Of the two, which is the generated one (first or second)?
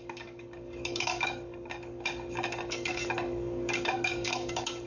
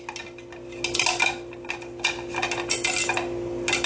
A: first